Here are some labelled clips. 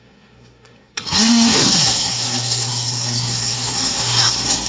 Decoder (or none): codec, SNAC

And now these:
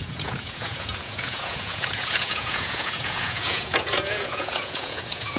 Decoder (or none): vocoder, Vocos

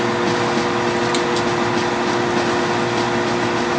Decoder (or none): none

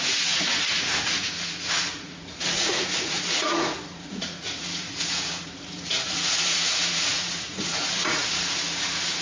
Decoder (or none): vocoder, Vocos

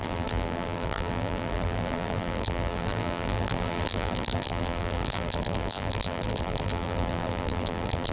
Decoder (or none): vocoder, BigVGAN v2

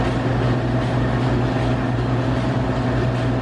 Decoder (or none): none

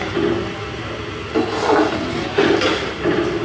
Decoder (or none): vocoder, BigVGAN v2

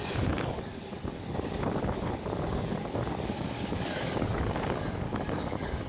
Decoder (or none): codec, DAC